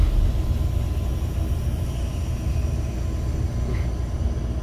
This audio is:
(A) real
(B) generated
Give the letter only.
A